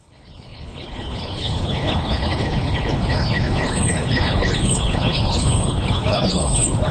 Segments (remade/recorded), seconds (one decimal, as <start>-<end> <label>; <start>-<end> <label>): 0.0-6.9 remade